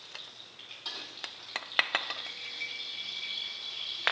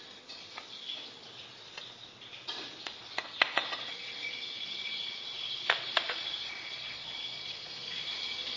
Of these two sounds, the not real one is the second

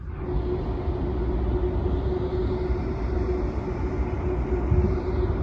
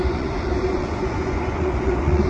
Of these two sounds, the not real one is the second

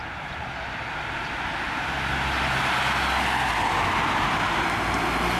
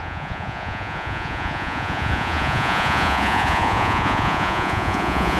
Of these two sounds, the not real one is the second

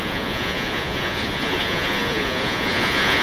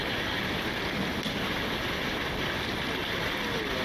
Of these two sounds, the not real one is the first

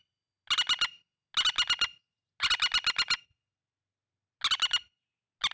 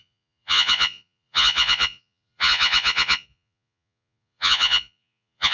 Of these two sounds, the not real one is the second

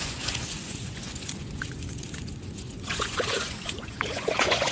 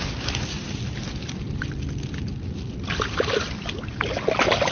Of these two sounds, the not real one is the first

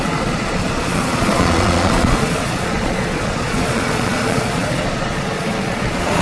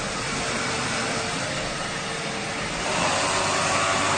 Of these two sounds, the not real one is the first